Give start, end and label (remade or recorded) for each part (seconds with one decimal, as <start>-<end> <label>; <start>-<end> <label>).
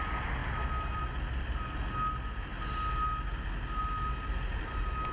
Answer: 0.0-5.1 recorded